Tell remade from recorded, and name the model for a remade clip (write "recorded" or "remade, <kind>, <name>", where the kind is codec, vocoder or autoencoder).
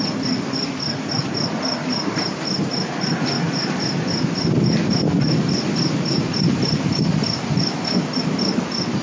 recorded